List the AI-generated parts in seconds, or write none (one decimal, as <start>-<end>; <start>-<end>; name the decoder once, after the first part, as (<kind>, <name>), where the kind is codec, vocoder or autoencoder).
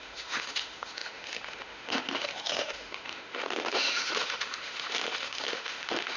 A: 0.0-6.2 (autoencoder, DAC-VAE)